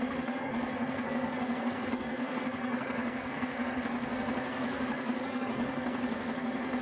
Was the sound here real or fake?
fake